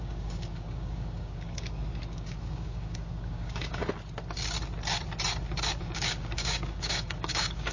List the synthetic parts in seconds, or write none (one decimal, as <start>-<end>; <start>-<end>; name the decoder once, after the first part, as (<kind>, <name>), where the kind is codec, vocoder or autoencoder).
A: 0.0-3.8 (codec, DAC); 5.8-7.7